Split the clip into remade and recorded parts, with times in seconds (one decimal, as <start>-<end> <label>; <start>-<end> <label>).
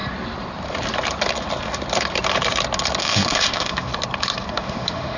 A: 0.0-3.0 recorded; 3.0-3.9 remade; 3.9-4.5 recorded; 4.5-5.2 remade